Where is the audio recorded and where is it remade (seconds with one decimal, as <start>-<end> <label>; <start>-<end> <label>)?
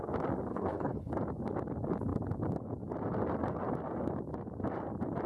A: 0.0-0.5 recorded; 0.5-1.1 remade; 1.1-5.3 recorded